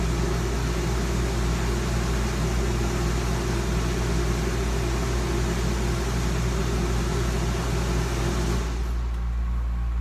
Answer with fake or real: real